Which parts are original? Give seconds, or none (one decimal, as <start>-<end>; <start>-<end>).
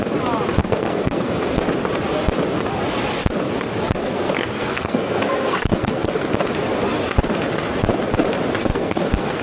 0.0-0.6; 1.3-4.0; 6.3-8.6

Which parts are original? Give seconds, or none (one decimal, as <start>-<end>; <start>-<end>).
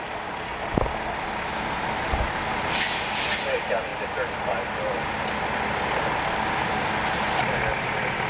0.0-8.3